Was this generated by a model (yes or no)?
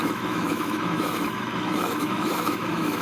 yes